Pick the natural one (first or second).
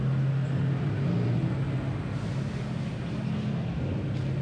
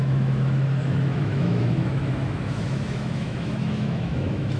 first